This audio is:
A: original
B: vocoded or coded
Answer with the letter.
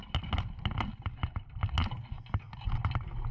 A